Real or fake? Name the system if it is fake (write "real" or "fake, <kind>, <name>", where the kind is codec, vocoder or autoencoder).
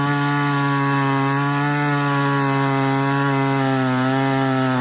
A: real